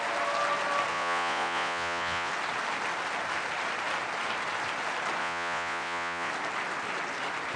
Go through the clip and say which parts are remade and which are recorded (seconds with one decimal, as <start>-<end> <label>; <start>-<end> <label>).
0.0-0.9 recorded; 0.9-2.3 remade; 2.3-5.2 recorded; 5.2-6.3 remade; 6.3-7.6 recorded